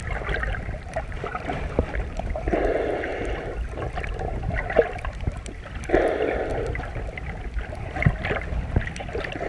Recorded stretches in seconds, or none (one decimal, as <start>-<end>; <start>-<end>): none